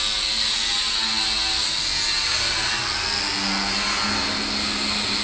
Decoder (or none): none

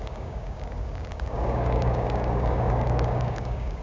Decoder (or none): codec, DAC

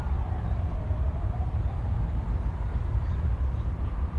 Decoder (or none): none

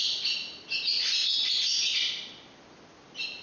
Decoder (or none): none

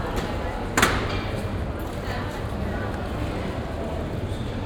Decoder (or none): none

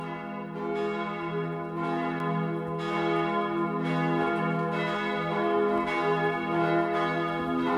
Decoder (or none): none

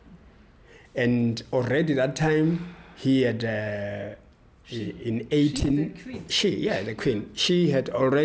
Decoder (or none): none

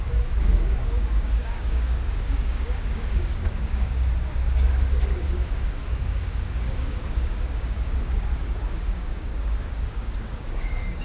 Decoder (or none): codec, DAC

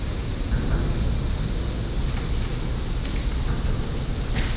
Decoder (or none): none